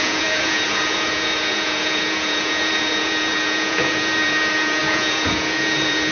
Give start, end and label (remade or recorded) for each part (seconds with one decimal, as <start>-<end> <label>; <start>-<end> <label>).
0.0-6.1 remade